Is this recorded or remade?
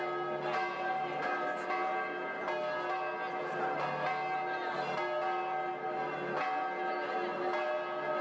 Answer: recorded